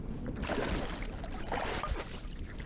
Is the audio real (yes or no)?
yes